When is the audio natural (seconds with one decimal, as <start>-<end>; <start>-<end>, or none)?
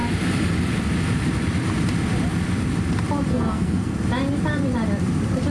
0.0-3.3; 3.9-5.5